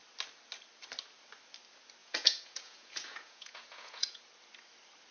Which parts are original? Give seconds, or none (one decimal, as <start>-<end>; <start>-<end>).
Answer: 0.0-2.0; 4.2-5.1